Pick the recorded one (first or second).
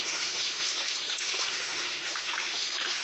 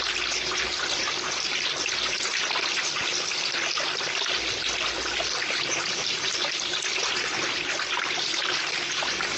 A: second